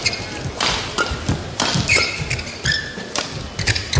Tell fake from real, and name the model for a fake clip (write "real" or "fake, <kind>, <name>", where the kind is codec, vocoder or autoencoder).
real